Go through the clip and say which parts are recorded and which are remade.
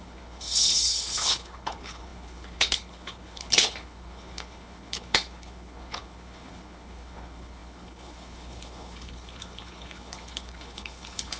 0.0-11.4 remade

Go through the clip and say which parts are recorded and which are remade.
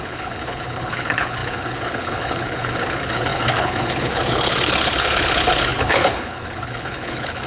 0.0-7.5 remade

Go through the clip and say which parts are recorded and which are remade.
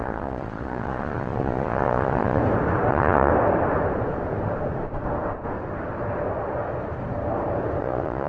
0.0-2.4 remade; 2.4-2.9 recorded; 2.9-3.3 remade; 3.3-7.8 recorded; 7.8-8.3 remade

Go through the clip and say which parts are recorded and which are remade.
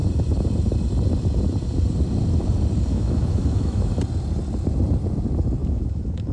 0.0-2.9 recorded; 2.9-3.9 remade; 3.9-5.6 recorded; 5.6-6.3 remade